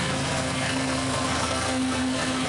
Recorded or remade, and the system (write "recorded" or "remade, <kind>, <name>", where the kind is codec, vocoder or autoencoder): remade, codec, SNAC